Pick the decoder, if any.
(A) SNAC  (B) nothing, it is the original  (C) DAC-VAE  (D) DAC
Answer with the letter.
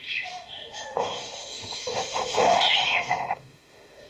C